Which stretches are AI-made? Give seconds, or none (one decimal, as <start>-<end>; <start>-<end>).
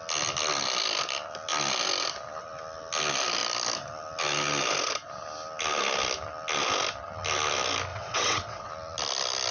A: 7.9-8.7